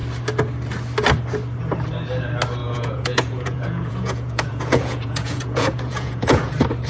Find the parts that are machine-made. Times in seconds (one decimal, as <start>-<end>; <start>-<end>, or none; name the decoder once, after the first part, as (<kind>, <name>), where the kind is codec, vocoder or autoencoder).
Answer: 2.6-6.5 (vocoder, Vocos)